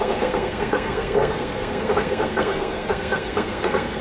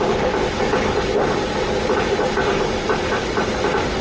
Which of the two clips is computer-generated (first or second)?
first